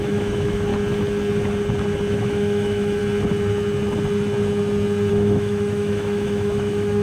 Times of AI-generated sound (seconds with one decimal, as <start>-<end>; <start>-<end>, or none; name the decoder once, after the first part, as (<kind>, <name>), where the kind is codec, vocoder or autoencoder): 0.0-0.7 (autoencoder, DAC-VAE); 2.1-3.0; 5.1-7.0